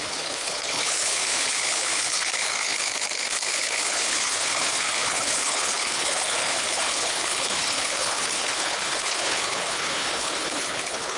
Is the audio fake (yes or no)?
yes